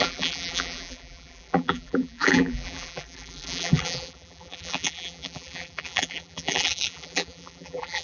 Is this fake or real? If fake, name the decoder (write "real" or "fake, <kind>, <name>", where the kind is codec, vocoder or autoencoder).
fake, vocoder, BigVGAN v2